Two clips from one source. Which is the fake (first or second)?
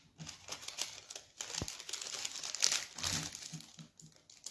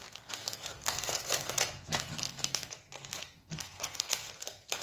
second